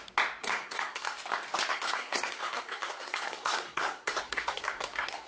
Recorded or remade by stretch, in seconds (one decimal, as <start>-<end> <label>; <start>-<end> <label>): 0.0-0.4 recorded; 0.4-1.2 remade; 1.2-1.7 recorded; 1.7-5.3 remade